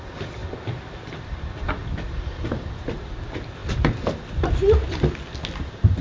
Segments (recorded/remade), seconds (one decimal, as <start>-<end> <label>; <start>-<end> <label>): 0.0-6.0 recorded